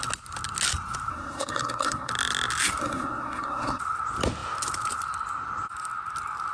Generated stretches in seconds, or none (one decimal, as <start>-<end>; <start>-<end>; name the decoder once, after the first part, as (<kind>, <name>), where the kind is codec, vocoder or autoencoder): 1.1-2.1 (codec, SNAC); 2.8-3.8